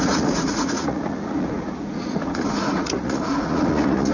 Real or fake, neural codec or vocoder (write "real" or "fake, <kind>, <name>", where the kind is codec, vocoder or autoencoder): fake, vocoder, Vocos